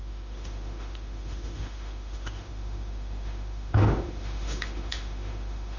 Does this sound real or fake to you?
fake